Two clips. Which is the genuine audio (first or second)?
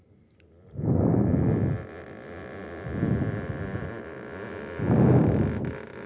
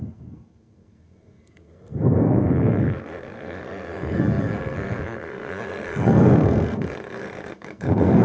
first